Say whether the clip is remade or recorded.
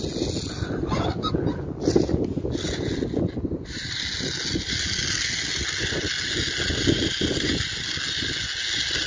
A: recorded